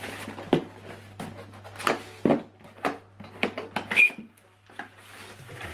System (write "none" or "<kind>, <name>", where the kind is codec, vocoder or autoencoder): none